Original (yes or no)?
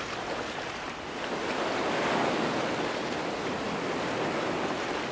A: yes